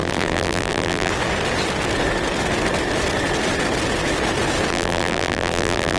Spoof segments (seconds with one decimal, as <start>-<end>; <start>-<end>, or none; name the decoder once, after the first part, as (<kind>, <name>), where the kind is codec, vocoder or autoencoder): 0.0-1.1 (vocoder, BigVGAN v2); 4.7-6.0

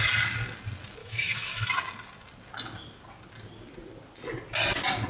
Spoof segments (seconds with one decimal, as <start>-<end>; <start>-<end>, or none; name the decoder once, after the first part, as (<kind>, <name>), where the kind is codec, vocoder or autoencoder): 1.0-1.7 (autoencoder, DAC-VAE)